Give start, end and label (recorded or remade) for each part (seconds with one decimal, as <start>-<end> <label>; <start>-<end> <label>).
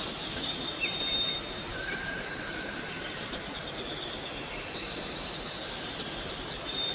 0.0-6.9 remade